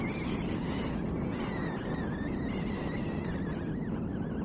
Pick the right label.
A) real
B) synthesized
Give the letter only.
A